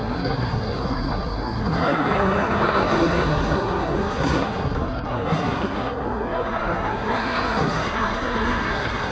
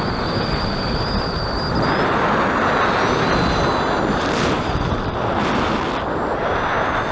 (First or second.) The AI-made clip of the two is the first